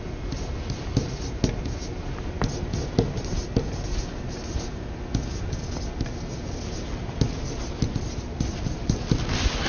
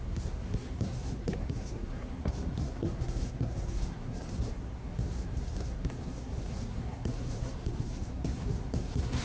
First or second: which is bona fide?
first